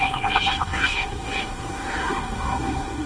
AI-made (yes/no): yes